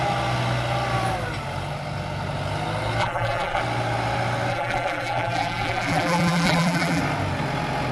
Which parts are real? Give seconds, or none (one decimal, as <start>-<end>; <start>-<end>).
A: 0.0-3.0; 3.6-4.5; 7.0-7.9

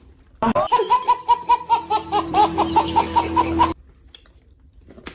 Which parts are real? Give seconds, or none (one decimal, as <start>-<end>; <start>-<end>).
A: 2.4-3.9

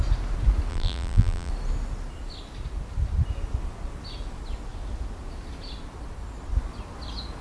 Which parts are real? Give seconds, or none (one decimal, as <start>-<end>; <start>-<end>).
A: 0.0-0.7; 1.5-7.4

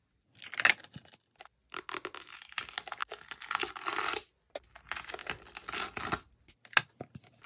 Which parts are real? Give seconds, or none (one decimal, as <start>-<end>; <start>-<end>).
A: 0.0-7.5